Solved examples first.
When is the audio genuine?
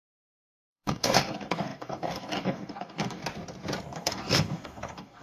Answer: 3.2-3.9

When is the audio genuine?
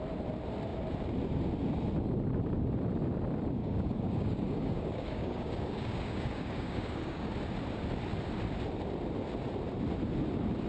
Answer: 0.0-3.6; 7.3-10.7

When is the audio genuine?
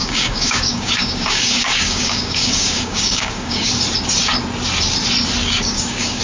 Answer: 3.7-5.4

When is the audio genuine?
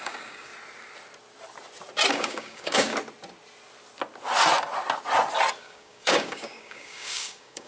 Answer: 0.5-2.1; 2.9-5.6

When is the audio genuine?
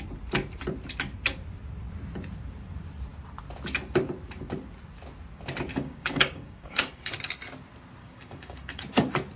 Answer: 0.0-5.7; 7.2-8.0; 8.8-9.4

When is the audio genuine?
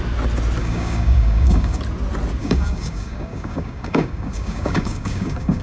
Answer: 0.0-0.6; 1.8-2.4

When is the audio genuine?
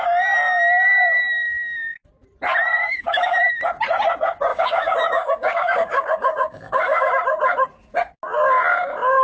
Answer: 0.0-2.7; 3.5-4.5; 7.1-9.2